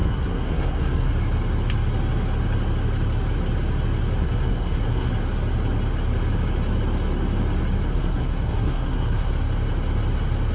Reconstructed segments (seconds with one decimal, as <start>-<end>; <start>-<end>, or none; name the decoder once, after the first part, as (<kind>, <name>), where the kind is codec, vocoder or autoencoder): 0.0-1.1 (codec, SNAC); 4.2-5.1; 7.9-9.3